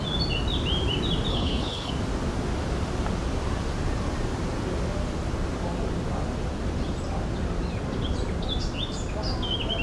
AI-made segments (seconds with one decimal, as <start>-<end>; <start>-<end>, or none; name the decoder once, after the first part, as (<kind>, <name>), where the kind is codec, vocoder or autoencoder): 1.3-1.9 (codec, HILCodec)